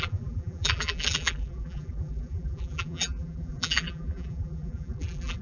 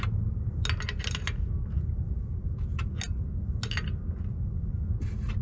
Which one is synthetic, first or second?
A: first